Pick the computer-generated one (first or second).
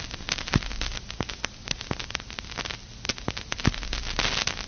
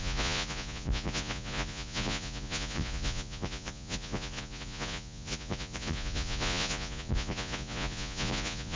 second